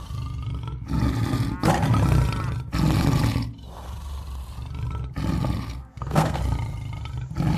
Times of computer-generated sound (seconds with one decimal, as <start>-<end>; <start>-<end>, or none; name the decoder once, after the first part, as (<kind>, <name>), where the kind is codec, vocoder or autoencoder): 5.8-6.4 (codec, SNAC)